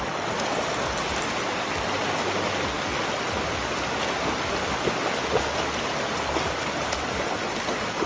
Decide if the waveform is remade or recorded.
recorded